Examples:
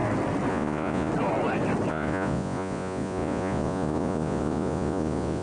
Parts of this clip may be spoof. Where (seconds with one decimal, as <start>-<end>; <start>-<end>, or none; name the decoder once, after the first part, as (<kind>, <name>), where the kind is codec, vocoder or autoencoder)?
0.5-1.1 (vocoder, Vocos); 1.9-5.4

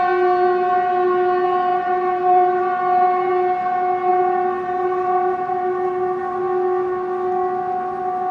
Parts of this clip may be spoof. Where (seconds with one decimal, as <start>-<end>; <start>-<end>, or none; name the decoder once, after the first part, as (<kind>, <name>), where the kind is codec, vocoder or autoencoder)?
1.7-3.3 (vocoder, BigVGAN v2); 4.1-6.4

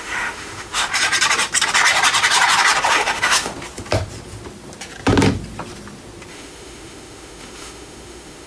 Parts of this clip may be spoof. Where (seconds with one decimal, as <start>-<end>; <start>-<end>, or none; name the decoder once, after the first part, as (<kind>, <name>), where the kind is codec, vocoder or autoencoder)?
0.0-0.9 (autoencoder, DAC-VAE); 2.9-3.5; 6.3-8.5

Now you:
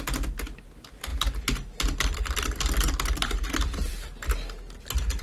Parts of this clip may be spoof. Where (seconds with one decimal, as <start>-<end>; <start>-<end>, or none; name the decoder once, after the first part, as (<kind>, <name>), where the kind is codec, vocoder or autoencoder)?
none

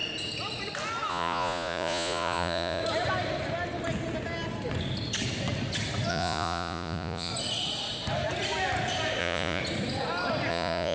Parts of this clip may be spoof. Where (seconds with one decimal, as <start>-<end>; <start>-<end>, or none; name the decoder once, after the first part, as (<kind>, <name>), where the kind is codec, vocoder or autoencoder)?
1.1-2.8 (vocoder, Vocos); 6.1-7.3; 9.2-9.6; 10.5-10.9

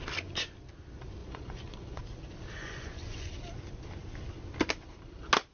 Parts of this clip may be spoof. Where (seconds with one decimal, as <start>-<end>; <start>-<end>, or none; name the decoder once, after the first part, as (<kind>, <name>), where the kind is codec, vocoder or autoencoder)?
1.2-2.0 (vocoder, Vocos); 2.6-3.3

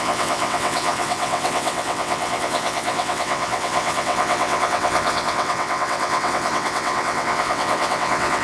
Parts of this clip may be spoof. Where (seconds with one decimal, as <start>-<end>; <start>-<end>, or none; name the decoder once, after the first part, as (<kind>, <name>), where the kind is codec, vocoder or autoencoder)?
0.0-8.4 (vocoder, WaveNeXt)

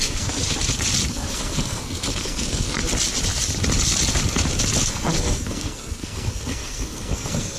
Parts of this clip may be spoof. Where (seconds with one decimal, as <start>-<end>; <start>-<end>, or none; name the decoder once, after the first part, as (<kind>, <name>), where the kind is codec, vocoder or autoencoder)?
0.0-0.4 (codec, SNAC); 1.1-2.8; 4.9-7.6